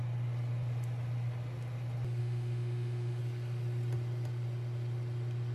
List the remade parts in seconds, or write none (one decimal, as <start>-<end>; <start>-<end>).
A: 2.2-3.2